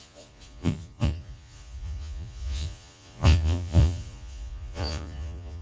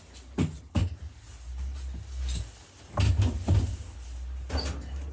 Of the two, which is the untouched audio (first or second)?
second